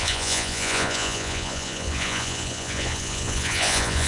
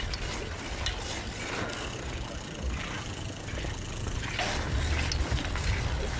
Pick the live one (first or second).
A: second